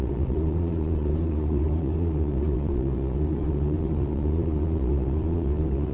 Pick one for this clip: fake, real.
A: fake